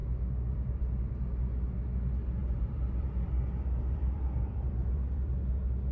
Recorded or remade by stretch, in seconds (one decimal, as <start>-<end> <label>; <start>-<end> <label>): 0.0-0.8 remade; 0.8-2.4 recorded; 2.4-5.4 remade; 5.4-5.9 recorded